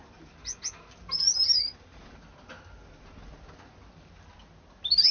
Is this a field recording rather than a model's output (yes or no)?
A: yes